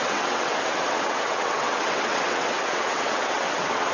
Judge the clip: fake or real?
fake